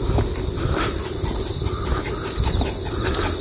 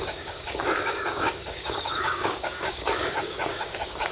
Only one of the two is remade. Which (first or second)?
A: second